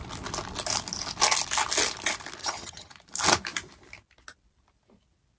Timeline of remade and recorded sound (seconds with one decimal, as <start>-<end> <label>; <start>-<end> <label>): 0.0-2.4 recorded; 2.4-2.9 remade; 2.9-5.4 recorded